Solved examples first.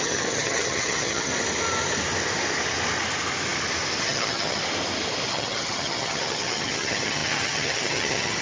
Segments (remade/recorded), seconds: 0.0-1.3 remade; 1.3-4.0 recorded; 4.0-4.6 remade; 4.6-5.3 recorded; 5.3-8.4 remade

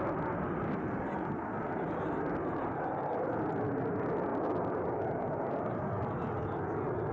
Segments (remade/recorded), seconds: 0.0-7.1 recorded

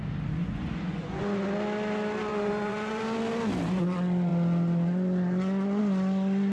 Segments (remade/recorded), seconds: 0.0-0.4 recorded; 0.4-1.2 remade; 1.2-2.3 recorded; 2.3-3.0 remade; 3.0-6.5 recorded

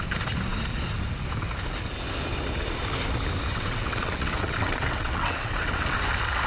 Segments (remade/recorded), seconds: 0.0-3.5 recorded; 3.5-6.0 remade; 6.0-6.5 recorded

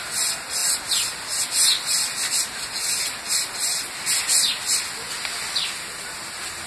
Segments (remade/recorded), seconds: 0.0-6.7 recorded